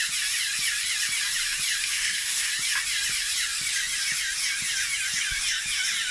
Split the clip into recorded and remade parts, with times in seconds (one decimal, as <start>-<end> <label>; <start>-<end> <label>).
0.0-1.9 recorded; 1.9-2.5 remade; 2.5-6.1 recorded